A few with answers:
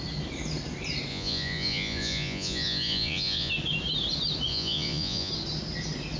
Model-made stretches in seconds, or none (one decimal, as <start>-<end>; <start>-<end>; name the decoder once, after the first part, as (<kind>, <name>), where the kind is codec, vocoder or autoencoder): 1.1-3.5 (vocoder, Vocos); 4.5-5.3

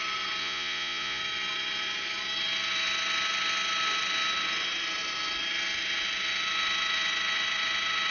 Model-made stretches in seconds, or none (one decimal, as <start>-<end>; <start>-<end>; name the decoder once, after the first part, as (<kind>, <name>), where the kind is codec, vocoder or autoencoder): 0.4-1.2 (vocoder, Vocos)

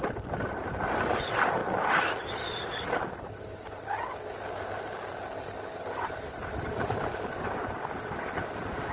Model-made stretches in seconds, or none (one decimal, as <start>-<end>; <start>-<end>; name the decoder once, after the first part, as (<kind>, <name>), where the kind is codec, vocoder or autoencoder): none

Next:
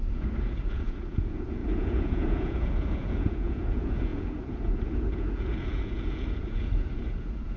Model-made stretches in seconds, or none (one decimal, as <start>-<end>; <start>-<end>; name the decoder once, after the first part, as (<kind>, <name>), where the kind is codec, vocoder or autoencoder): 0.0-7.6 (vocoder, Vocos)

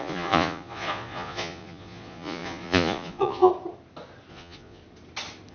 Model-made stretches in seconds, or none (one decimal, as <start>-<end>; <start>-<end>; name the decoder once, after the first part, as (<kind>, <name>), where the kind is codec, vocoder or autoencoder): 0.0-3.5 (vocoder, Vocos); 4.3-4.8

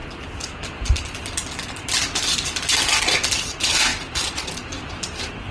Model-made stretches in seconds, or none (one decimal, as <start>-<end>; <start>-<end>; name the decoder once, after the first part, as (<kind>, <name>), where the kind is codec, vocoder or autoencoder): none

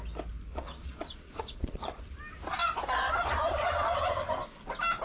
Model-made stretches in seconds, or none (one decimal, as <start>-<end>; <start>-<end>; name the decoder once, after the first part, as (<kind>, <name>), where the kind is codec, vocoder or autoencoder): 0.5-2.0 (vocoder, Vocos)

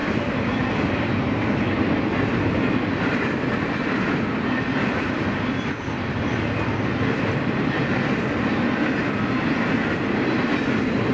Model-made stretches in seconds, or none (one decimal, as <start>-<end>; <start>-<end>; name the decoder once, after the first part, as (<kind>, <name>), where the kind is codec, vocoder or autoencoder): none